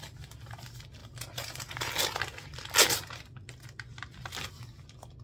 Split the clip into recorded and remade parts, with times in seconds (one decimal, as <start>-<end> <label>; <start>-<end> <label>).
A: 0.0-1.0 recorded; 1.0-1.9 remade; 1.9-5.2 recorded